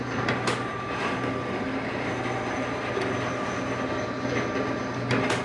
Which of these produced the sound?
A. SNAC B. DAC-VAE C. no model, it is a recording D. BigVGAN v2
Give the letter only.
C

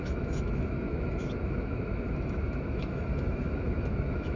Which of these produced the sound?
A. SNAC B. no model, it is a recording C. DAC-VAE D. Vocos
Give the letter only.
C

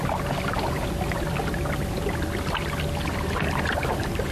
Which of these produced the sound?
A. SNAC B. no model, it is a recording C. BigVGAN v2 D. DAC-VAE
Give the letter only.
B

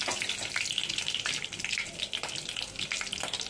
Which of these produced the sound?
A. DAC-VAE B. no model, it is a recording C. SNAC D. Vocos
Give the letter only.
B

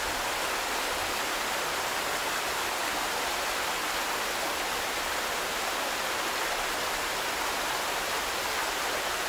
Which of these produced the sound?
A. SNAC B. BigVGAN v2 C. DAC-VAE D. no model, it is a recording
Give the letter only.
D